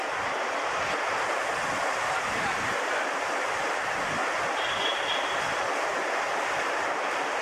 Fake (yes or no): no